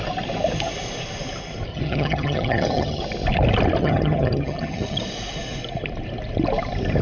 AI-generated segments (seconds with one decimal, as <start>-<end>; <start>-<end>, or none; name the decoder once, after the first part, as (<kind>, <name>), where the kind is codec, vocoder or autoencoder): 1.7-3.0 (vocoder, HiFi-GAN); 3.8-5.0